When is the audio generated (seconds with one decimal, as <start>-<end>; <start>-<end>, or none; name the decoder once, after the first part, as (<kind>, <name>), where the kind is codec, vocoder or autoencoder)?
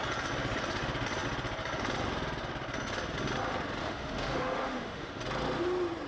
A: 3.8-5.2 (autoencoder, DAC-VAE)